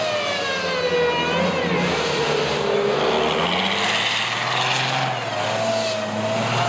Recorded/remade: recorded